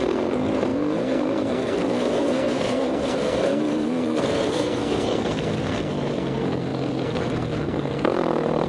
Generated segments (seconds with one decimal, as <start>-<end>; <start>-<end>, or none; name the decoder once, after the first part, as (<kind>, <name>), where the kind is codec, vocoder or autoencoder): 0.0-8.7 (codec, SNAC)